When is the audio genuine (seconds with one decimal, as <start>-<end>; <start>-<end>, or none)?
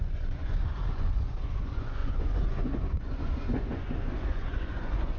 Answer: none